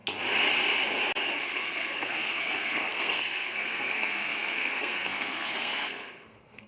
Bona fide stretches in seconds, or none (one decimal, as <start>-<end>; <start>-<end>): 0.0-1.4